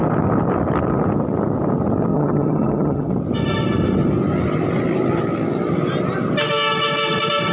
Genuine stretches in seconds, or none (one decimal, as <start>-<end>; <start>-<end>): 0.0-2.1; 3.1-7.5